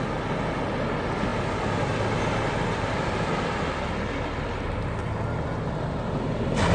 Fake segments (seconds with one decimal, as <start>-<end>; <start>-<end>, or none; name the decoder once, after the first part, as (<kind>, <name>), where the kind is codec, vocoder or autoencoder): none